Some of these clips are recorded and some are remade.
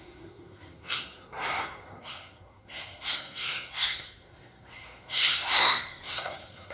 remade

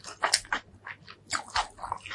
recorded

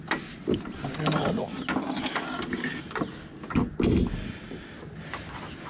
recorded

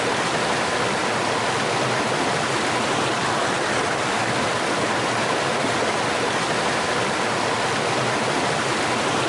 recorded